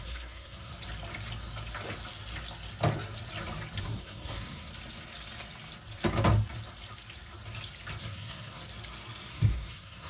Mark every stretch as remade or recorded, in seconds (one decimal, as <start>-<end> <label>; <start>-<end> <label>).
0.0-0.7 remade; 0.7-3.8 recorded; 3.8-4.7 remade; 4.7-8.0 recorded; 8.0-8.6 remade; 8.6-9.3 recorded; 9.3-10.1 remade